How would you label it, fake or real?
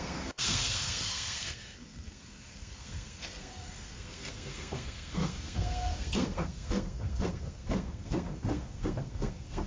fake